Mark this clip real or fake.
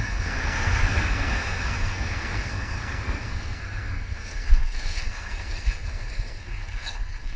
fake